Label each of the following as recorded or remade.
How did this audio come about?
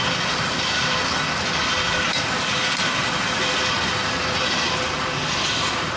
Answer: recorded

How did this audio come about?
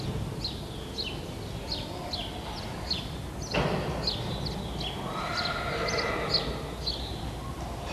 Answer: recorded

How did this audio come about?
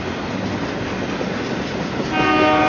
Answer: recorded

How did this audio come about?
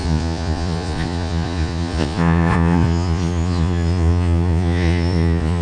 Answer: remade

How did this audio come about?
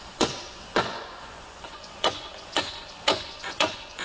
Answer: remade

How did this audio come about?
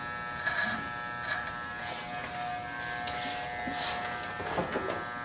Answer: recorded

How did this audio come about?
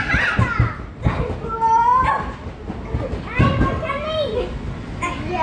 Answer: recorded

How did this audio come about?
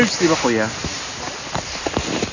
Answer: recorded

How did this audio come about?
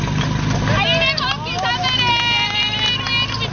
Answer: recorded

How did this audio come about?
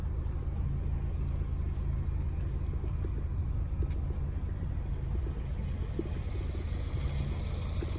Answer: recorded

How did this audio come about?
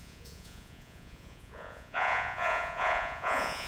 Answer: remade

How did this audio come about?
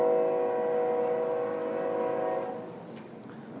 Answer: recorded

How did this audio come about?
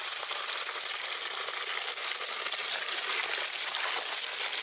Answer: recorded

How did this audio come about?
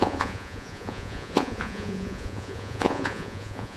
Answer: remade